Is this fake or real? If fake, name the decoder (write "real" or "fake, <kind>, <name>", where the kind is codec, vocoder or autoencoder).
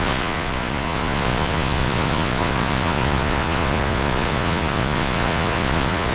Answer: fake, vocoder, Vocos